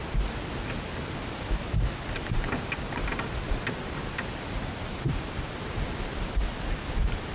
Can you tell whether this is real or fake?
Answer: real